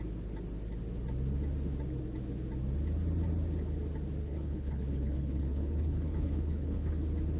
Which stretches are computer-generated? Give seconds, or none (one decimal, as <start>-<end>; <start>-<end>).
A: 4.2-6.9